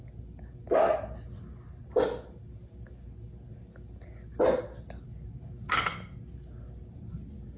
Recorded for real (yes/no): yes